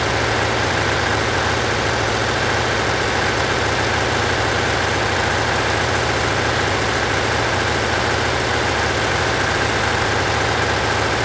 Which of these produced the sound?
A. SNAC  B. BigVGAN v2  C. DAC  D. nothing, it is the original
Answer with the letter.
D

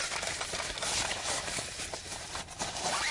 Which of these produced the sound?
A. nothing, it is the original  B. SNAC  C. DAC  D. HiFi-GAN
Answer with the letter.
A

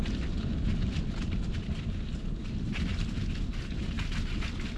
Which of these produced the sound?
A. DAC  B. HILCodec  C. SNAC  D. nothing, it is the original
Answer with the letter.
D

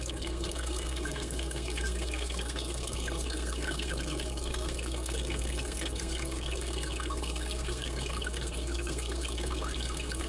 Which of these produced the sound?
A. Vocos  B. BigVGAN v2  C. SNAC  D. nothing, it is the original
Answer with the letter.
C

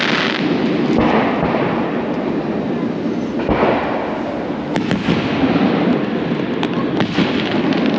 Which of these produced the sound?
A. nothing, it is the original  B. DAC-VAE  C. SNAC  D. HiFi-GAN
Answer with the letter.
A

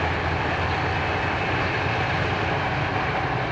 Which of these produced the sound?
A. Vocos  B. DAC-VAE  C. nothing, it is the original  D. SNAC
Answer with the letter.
C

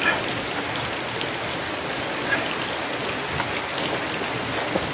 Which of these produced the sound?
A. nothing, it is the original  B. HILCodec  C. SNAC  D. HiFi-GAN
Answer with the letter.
A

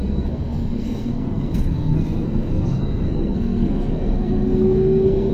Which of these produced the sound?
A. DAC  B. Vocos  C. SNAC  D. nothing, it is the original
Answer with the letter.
C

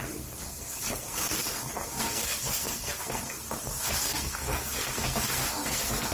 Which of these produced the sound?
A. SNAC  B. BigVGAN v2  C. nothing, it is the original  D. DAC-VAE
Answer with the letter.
A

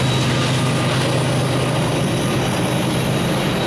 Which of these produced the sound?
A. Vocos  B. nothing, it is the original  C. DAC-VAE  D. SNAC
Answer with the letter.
B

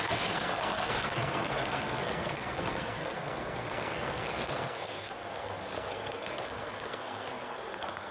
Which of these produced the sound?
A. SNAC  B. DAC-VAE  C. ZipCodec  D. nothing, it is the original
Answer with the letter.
A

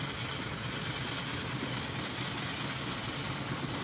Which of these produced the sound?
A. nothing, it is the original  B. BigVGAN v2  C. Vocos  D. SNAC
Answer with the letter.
A